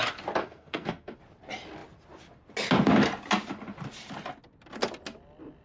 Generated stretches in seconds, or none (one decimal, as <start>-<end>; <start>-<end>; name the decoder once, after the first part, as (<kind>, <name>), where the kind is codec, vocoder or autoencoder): 0.4-1.2 (codec, SNAC)